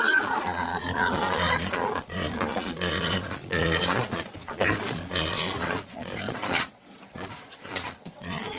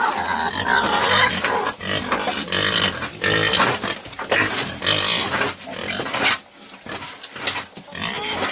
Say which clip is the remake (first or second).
first